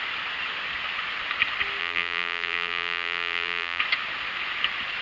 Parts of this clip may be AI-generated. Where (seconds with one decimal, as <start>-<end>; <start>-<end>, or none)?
1.8-3.8